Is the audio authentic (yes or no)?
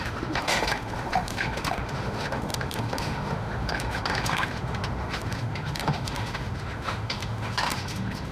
no